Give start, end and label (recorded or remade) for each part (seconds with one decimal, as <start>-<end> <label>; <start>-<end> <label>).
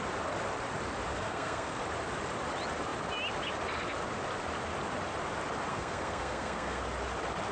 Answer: 0.0-1.1 recorded; 1.1-1.8 remade; 1.8-5.7 recorded; 5.7-6.8 remade; 6.8-7.5 recorded